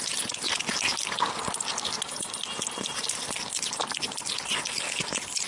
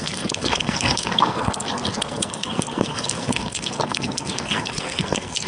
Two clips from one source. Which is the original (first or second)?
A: first